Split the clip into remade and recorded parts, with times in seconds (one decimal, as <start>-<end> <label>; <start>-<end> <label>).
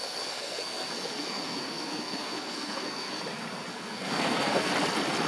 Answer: 0.0-3.2 remade; 3.2-3.7 recorded; 3.7-4.7 remade; 4.7-5.3 recorded